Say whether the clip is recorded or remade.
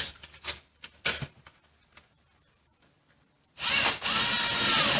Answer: recorded